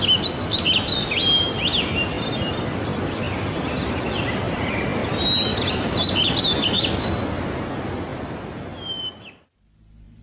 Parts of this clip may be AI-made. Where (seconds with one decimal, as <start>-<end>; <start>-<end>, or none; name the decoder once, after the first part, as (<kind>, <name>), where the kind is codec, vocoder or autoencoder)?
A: none